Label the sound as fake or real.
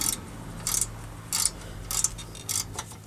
real